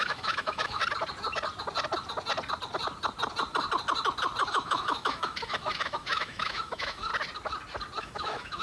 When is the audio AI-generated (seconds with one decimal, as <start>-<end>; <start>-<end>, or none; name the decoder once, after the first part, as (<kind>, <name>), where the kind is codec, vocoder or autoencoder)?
0.0-0.8 (autoencoder, DAC-VAE); 4.5-7.1; 8.0-8.6